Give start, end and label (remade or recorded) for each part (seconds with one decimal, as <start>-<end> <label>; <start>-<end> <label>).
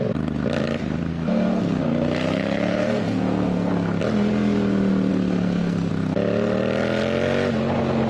0.0-1.1 recorded; 1.1-3.7 remade; 3.7-5.1 recorded; 5.1-5.9 remade; 5.9-8.1 recorded